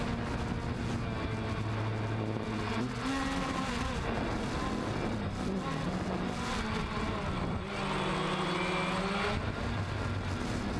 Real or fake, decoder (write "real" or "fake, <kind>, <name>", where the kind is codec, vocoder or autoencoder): real